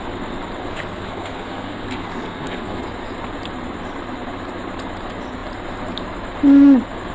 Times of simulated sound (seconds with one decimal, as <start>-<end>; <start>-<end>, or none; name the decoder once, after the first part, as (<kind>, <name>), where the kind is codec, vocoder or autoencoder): 0.7-2.8 (codec, SNAC)